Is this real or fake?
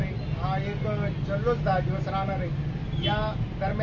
real